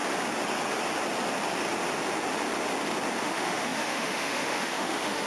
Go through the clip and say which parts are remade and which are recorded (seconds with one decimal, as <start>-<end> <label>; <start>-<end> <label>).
0.0-3.2 recorded; 3.2-5.3 remade